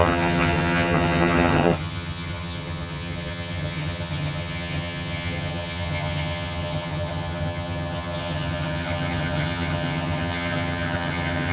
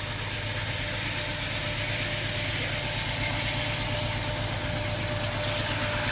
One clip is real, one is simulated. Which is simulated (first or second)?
first